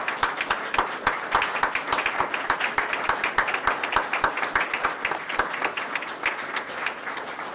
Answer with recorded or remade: recorded